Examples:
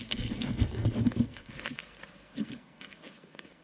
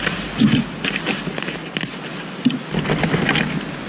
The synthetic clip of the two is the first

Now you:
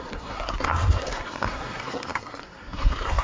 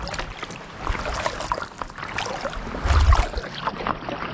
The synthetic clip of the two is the first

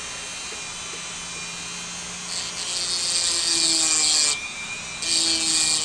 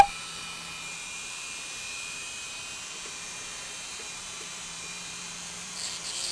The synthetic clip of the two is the second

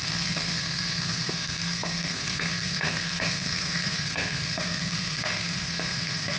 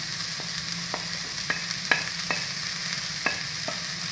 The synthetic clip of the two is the first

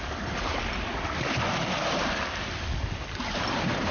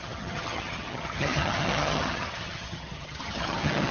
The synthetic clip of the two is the second